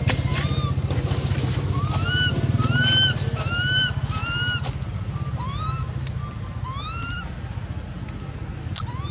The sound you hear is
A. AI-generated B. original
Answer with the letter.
B